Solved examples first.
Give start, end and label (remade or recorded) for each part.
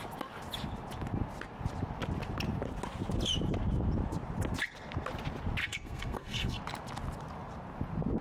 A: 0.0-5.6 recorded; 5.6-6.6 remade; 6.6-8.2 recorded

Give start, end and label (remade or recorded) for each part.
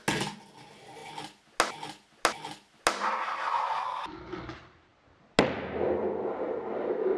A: 0.0-7.2 recorded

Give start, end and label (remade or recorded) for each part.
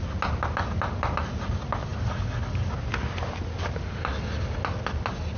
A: 0.0-5.4 recorded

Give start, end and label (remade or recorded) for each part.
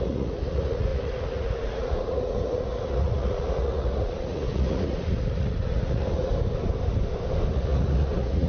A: 0.0-6.3 remade; 6.3-7.5 recorded; 7.5-8.5 remade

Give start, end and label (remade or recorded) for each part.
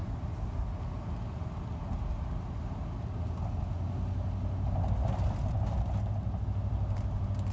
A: 0.0-7.5 recorded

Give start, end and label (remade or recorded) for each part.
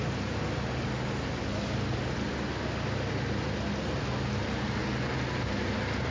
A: 0.0-6.1 recorded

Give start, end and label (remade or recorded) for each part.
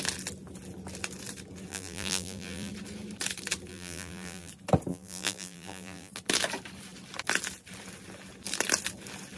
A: 0.0-1.7 recorded; 1.7-2.7 remade; 2.7-3.7 recorded; 3.7-4.5 remade; 4.5-4.9 recorded; 4.9-6.1 remade; 6.1-9.4 recorded